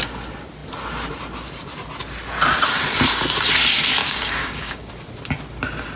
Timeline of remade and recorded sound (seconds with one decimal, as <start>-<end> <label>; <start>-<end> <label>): 0.0-4.0 recorded; 4.0-4.9 remade; 4.9-6.0 recorded